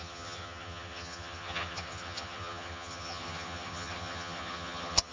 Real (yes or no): no